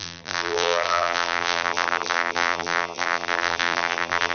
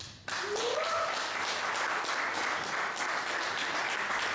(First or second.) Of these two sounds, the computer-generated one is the first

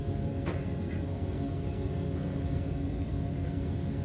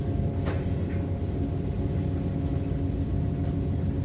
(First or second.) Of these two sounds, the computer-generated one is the first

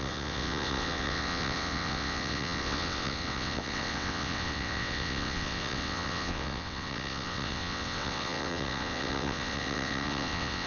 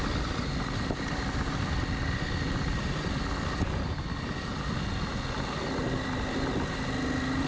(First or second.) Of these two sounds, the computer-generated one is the first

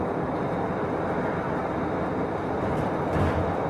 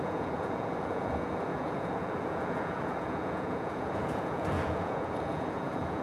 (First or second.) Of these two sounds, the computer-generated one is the second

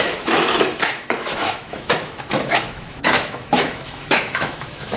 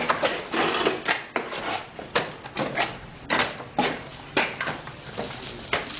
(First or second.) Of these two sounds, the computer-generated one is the first